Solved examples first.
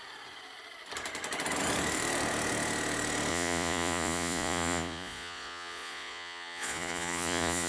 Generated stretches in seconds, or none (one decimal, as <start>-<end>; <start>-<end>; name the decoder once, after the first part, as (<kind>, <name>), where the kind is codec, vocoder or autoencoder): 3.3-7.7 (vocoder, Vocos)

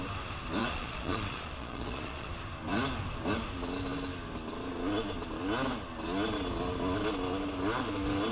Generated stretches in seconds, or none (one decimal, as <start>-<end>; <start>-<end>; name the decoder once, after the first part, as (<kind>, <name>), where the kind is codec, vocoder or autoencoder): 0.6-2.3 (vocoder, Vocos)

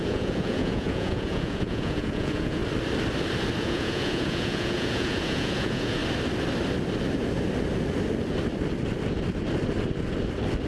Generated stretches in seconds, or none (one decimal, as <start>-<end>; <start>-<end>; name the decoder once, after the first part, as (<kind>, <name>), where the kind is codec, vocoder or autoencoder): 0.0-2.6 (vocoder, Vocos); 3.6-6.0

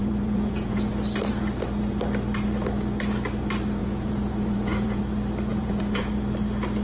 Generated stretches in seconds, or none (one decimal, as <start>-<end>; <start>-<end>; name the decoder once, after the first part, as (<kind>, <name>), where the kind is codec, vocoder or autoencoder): 0.0-0.9 (vocoder, Vocos); 3.8-5.0; 5.5-6.1